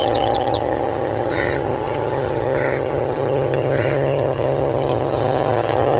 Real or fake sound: fake